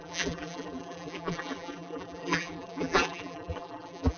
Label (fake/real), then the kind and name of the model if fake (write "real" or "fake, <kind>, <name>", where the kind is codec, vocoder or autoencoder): fake, vocoder, BigVGAN v2